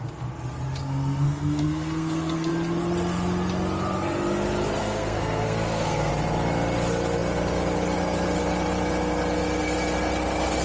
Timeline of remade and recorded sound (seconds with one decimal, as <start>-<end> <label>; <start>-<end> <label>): 0.0-0.8 recorded; 0.8-2.5 remade; 2.5-4.8 recorded; 4.8-6.1 remade; 6.1-10.6 recorded